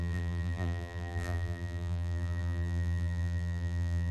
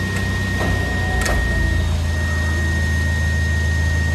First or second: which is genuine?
second